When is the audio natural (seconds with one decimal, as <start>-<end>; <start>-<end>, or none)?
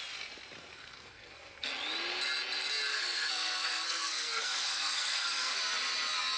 0.0-0.7; 1.7-2.9; 5.6-6.4